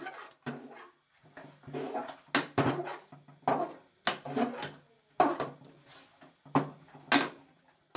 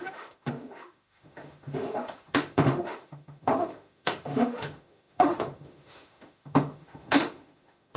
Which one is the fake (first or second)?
second